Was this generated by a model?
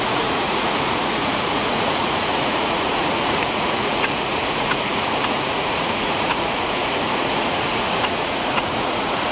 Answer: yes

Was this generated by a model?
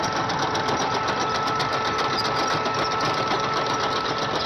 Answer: no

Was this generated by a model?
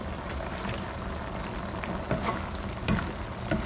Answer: no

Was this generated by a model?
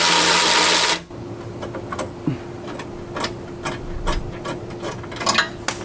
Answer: no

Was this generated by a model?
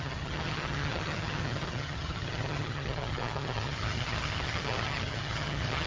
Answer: yes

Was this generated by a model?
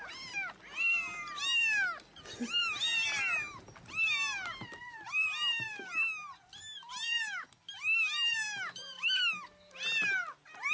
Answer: no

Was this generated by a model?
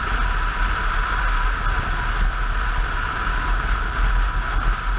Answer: no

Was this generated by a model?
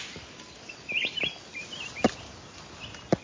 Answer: no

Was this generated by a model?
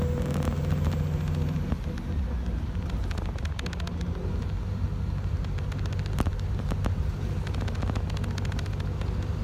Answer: no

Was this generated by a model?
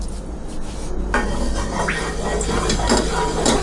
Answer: no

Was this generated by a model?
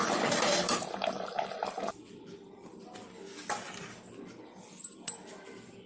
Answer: no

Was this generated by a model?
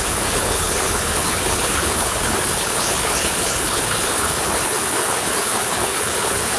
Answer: yes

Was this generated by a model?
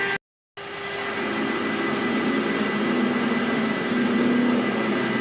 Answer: no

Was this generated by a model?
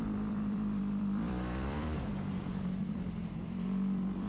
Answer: yes